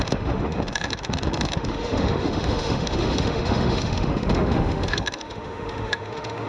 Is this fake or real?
fake